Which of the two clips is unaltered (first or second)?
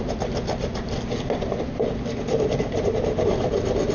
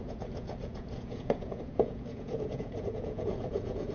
first